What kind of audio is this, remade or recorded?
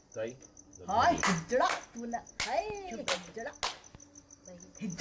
recorded